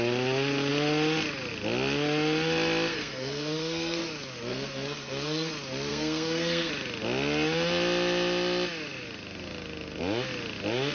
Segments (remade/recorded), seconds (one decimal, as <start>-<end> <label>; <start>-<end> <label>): 0.0-2.9 recorded; 2.9-4.0 remade; 4.0-4.5 recorded; 4.5-5.5 remade; 5.5-5.9 recorded; 5.9-6.7 remade; 6.7-10.9 recorded